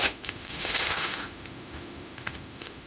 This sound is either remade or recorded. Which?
remade